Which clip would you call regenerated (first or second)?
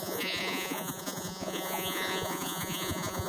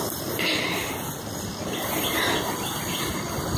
first